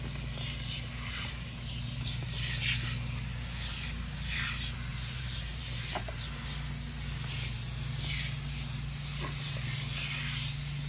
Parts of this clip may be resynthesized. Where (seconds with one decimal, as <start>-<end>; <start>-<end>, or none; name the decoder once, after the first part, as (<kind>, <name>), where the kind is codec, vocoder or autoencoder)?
4.9-5.6 (vocoder, BigVGAN v2)